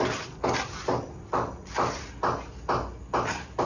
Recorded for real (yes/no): yes